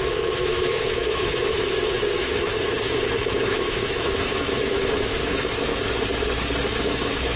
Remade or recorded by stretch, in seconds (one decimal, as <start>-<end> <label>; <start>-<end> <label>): 0.0-5.7 remade; 5.7-6.8 recorded; 6.8-7.4 remade